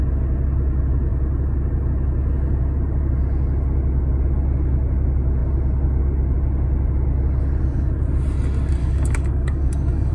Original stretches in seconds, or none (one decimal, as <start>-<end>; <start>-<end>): 0.0-8.8

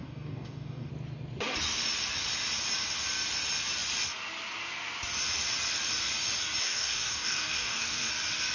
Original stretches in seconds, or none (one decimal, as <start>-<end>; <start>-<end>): 0.9-6.6; 8.1-8.5

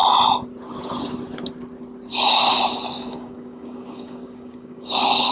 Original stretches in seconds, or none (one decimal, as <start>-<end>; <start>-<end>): 0.0-2.1

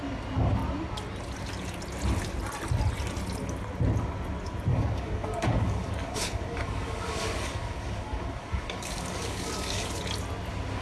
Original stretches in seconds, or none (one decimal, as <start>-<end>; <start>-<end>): 0.0-4.7; 10.0-10.8

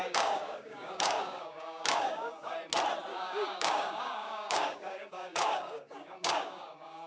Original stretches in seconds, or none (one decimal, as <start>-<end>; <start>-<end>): 2.5-3.1

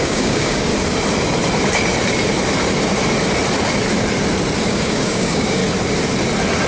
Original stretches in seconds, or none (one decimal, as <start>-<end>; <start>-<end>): 0.7-4.7; 5.6-6.7

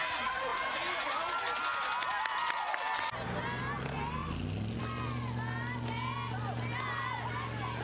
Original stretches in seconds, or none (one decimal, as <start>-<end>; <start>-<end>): 0.0-7.8

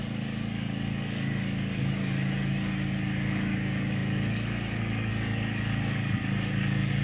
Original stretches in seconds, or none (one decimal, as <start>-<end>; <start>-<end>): none